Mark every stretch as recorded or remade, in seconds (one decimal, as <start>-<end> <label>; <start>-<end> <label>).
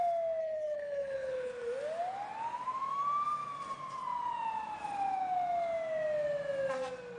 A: 0.0-0.4 recorded; 0.4-1.5 remade; 1.5-7.2 recorded